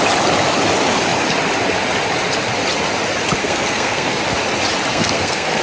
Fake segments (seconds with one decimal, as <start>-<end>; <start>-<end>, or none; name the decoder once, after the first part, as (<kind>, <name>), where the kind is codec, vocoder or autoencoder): 3.4-4.2 (codec, SNAC); 4.9-5.6